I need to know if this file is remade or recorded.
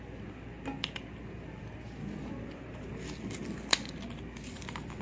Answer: recorded